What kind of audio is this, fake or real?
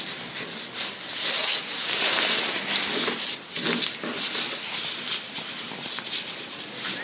real